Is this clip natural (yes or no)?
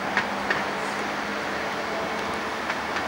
yes